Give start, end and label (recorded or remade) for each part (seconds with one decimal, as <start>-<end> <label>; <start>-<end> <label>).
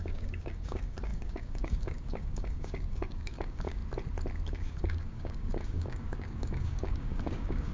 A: 0.0-3.8 remade; 3.8-4.5 recorded; 4.5-7.7 remade